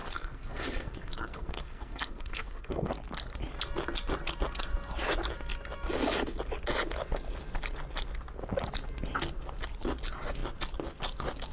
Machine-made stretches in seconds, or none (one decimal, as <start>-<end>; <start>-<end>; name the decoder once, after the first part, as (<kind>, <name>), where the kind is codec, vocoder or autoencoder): 0.0-2.9 (codec, SNAC)

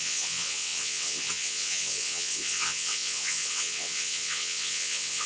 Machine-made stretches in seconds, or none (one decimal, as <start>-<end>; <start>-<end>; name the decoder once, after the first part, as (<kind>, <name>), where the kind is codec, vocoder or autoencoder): 0.0-5.3 (vocoder, WaveNeXt)